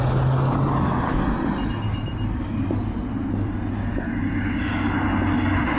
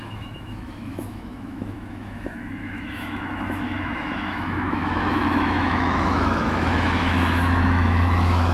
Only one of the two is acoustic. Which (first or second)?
first